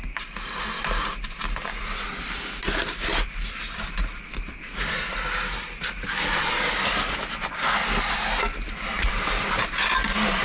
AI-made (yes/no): no